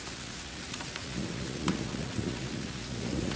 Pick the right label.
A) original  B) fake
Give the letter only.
B